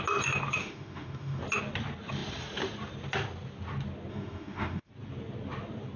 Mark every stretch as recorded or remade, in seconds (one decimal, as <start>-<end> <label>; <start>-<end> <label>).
0.0-0.6 recorded; 0.6-1.4 remade; 1.4-4.1 recorded; 4.1-4.9 remade; 4.9-6.0 recorded